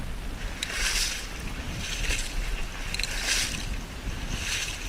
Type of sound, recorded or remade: recorded